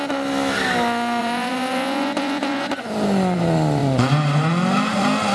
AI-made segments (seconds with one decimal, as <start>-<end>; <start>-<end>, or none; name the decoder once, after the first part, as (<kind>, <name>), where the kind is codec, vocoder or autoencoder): 1.2-2.9 (vocoder, Vocos); 3.8-4.5